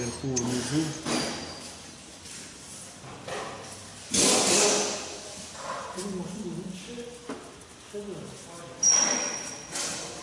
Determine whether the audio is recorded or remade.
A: recorded